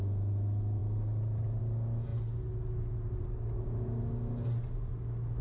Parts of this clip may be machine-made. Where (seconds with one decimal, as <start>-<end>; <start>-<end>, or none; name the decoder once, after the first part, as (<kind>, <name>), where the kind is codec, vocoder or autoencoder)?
none

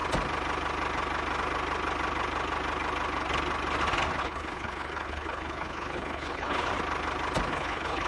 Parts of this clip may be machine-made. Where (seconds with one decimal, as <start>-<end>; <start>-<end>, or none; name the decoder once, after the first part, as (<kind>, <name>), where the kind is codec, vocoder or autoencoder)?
4.2-6.7 (codec, HILCodec); 7.5-8.1